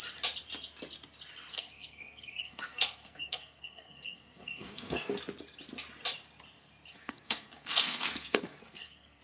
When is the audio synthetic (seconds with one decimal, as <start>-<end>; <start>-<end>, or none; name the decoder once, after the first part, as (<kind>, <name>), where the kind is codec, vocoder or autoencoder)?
1.5-5.1 (codec, SNAC); 6.9-9.2